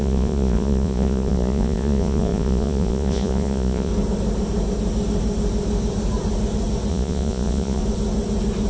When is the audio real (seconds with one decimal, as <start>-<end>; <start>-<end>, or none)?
3.9-6.9; 7.8-8.7